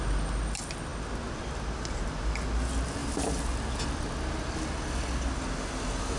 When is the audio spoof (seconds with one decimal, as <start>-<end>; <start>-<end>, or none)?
none